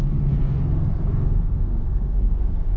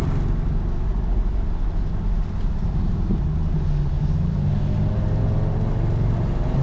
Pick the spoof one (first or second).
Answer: first